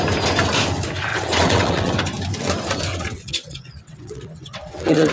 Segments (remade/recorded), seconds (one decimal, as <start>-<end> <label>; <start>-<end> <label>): 0.0-1.1 recorded; 1.1-2.0 remade; 2.0-2.9 recorded; 2.9-5.1 remade